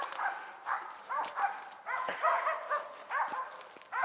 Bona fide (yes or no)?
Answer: yes